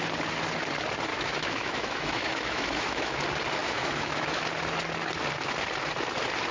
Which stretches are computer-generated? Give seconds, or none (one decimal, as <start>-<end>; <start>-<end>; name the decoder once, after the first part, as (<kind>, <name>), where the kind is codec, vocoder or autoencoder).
1.1-3.2 (autoencoder, DAC-VAE); 3.6-4.4